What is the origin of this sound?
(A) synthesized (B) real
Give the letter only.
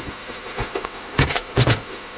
A